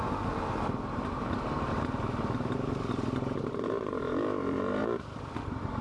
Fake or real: fake